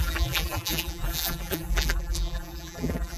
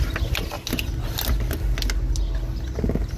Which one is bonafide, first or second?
second